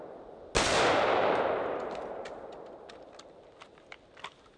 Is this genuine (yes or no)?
yes